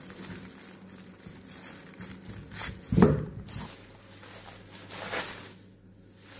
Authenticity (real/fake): real